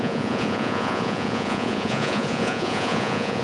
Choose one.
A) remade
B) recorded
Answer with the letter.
A